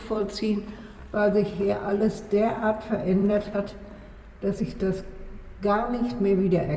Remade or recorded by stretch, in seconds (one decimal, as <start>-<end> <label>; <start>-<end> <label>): 0.0-1.5 remade; 1.5-1.9 recorded; 1.9-2.6 remade; 2.6-3.2 recorded; 3.2-4.6 remade; 4.6-6.8 recorded